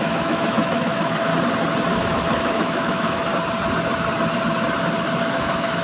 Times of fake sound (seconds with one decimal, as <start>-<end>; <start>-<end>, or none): 0.0-1.3; 1.9-3.3; 5.2-5.8